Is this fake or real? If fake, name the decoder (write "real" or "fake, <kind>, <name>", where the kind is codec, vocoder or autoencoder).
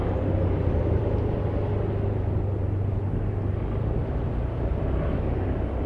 real